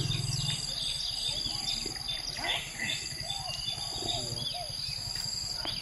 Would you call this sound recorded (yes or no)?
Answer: yes